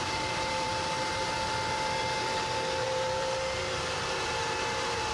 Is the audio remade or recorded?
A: remade